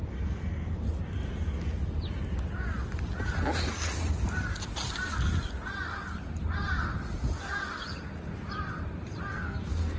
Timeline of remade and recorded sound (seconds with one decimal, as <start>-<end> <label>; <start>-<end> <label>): 0.0-9.3 recorded; 9.3-10.0 remade